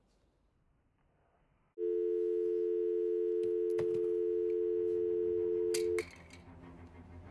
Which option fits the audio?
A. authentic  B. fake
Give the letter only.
A